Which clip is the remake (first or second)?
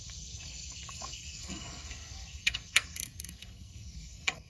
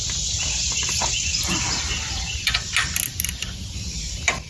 first